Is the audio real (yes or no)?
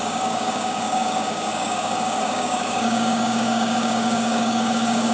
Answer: no